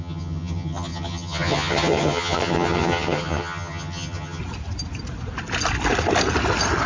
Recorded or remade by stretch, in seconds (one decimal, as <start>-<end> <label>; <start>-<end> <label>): 0.0-4.4 remade; 4.4-6.9 recorded